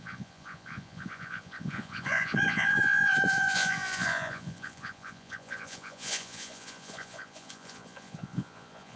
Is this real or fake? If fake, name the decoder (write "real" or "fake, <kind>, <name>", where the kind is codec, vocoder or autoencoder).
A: fake, vocoder, Vocos